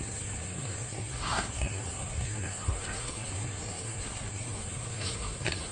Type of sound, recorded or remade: remade